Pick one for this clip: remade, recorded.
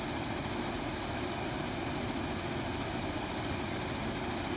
recorded